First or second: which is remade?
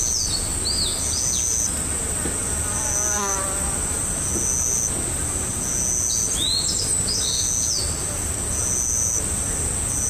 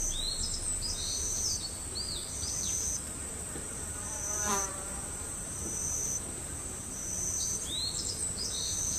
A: second